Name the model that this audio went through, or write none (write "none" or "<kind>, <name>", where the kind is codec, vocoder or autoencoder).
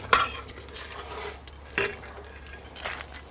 none